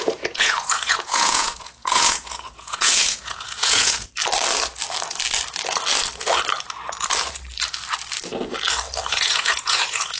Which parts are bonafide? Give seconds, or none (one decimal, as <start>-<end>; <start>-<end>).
4.1-9.1